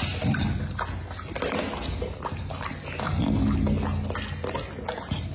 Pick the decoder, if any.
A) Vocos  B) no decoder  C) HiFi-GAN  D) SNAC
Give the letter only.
B